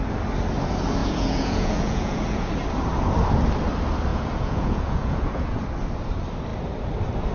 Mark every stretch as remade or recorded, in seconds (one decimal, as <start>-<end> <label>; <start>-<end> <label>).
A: 0.0-1.0 recorded; 1.0-2.5 remade; 2.5-4.1 recorded; 4.1-5.6 remade; 5.6-7.3 recorded